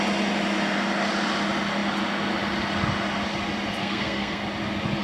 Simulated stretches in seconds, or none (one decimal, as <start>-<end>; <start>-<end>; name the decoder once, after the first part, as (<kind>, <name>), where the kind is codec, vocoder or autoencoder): 3.8-4.4 (codec, SNAC)